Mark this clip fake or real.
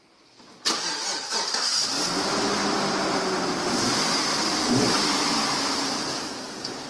real